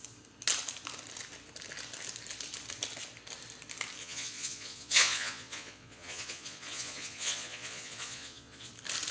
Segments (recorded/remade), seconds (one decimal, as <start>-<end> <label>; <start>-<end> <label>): 0.0-4.0 recorded; 4.0-8.7 remade; 8.7-9.1 recorded